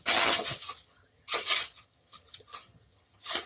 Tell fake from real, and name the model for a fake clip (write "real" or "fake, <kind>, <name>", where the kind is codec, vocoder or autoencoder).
fake, vocoder, HiFi-GAN